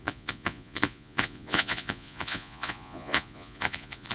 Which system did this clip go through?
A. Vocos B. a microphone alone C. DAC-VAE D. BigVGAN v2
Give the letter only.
A